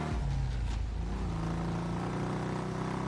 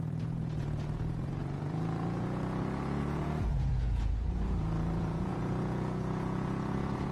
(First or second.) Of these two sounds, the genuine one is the first